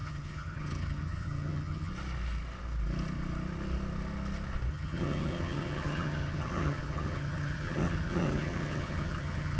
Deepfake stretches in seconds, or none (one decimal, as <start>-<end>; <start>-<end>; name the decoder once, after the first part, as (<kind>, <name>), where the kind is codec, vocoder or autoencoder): 0.0-1.9 (vocoder, HiFi-GAN); 4.7-9.6